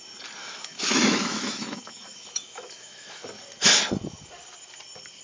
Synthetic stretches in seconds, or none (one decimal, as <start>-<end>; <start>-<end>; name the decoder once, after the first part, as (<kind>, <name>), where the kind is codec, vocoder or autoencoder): 0.4-3.3 (autoencoder, DAC-VAE)

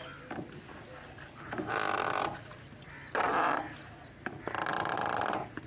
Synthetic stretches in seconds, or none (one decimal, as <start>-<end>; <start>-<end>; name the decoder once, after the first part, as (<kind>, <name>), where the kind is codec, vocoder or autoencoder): none

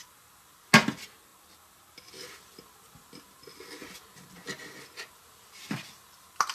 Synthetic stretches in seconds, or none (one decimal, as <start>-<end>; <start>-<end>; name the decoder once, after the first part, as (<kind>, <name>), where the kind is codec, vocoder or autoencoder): none